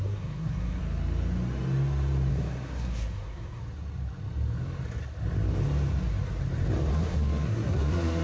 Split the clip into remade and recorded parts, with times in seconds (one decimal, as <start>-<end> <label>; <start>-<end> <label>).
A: 0.0-0.8 remade; 0.8-2.3 recorded; 2.3-3.6 remade; 3.6-6.9 recorded; 6.9-8.2 remade